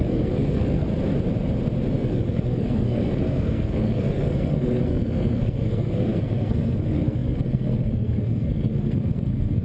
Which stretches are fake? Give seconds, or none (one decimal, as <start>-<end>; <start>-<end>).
0.0-0.9; 1.9-9.6

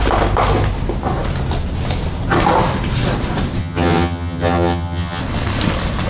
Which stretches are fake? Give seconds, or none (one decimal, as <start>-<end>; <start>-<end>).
3.6-5.2